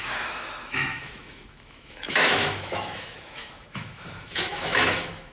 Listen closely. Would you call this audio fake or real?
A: fake